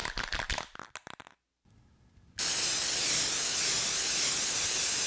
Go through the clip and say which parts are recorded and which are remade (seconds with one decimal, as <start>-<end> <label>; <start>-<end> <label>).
0.0-5.1 recorded